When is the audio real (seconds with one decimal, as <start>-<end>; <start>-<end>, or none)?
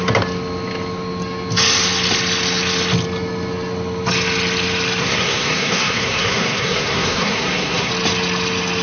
0.0-5.0; 7.9-8.8